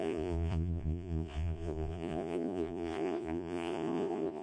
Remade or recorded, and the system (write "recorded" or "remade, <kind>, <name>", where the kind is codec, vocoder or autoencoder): remade, vocoder, Vocos